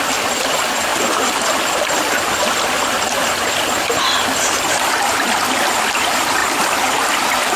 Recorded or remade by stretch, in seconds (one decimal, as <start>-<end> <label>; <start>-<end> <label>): 0.0-7.6 recorded